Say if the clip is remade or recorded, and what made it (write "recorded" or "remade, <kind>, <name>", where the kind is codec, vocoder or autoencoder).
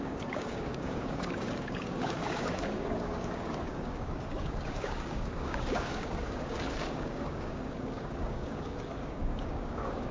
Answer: remade, codec, DAC